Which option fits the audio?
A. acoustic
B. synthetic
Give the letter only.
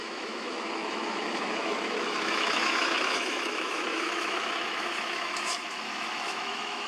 B